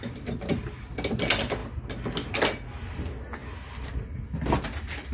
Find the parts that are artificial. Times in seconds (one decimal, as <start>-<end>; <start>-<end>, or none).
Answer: none